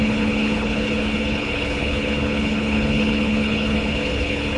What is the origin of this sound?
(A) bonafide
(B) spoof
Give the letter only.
B